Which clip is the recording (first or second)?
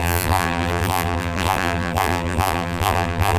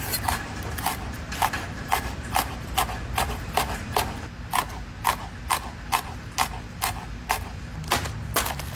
second